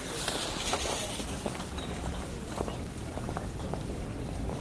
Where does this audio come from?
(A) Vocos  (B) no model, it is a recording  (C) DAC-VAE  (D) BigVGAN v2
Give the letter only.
D